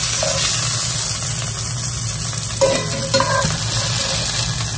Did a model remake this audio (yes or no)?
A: no